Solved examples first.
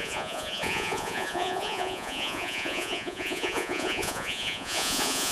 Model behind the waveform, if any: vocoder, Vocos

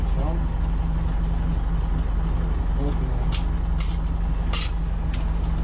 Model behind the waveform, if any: none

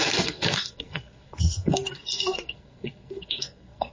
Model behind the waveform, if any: codec, SNAC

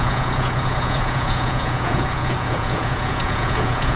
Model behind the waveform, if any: vocoder, Vocos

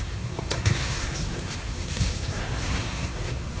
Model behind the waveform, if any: codec, SNAC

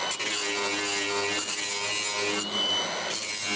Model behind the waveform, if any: none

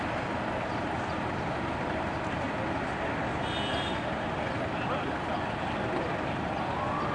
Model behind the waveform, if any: none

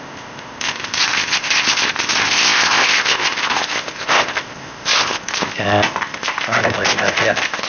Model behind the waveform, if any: codec, ZipCodec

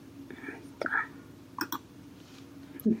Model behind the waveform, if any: none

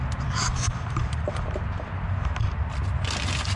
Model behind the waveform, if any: none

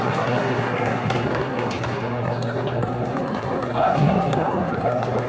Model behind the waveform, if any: codec, SNAC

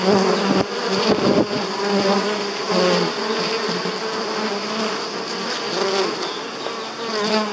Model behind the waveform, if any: none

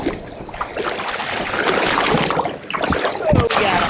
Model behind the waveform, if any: none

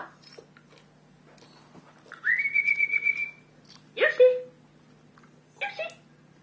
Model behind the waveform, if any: none